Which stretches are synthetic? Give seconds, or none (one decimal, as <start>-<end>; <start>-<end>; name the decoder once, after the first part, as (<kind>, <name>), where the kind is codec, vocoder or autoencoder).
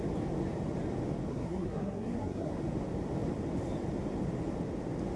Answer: 1.3-2.5 (codec, SNAC)